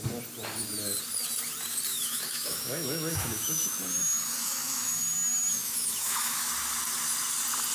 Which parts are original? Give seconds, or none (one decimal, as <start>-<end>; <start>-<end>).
0.0-1.9; 6.5-7.7